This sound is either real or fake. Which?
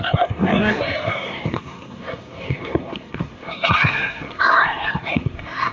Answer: fake